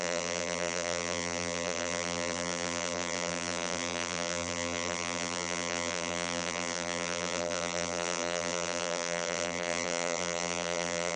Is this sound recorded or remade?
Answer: remade